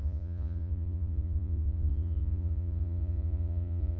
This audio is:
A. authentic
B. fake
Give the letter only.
B